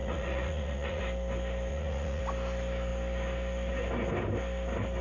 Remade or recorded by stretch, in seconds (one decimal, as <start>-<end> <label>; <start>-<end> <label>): 0.0-1.0 remade; 1.0-1.7 recorded; 1.7-2.2 remade; 2.2-5.0 recorded